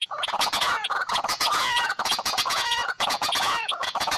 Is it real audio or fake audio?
fake